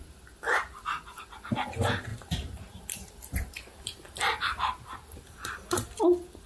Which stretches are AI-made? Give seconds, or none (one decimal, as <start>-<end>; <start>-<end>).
2.1-6.0